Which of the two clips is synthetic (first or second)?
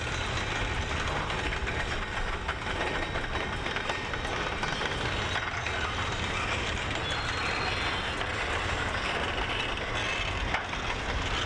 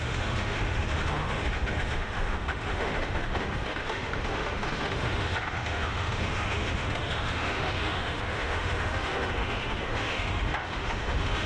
second